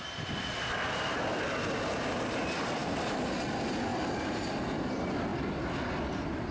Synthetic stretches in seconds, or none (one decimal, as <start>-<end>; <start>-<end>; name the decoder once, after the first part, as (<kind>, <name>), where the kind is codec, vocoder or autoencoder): 2.8-3.3 (vocoder, BigVGAN v2); 3.9-4.5